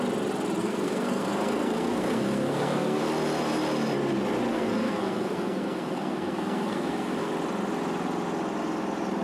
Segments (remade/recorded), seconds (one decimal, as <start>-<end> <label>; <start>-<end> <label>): 0.0-0.6 recorded; 0.6-3.0 remade; 3.0-4.5 recorded; 4.5-7.3 remade; 7.3-9.2 recorded